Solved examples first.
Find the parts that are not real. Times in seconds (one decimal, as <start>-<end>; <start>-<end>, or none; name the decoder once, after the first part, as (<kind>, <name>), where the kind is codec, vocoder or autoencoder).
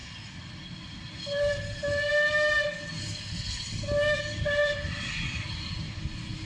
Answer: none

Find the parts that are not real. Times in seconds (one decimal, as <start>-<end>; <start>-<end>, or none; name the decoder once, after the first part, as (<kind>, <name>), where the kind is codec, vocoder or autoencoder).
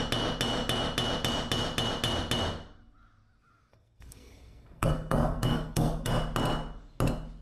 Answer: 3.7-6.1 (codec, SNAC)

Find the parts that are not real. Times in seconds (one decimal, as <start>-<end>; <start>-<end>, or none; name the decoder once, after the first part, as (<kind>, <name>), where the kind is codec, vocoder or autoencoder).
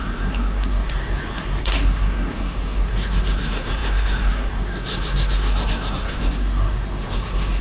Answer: 0.0-7.6 (codec, SNAC)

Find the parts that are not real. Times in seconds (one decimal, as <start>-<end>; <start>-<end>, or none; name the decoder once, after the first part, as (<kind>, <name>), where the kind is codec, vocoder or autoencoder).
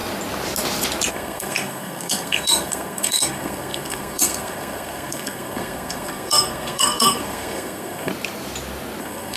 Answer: 1.1-8.1 (codec, SNAC); 9.0-9.4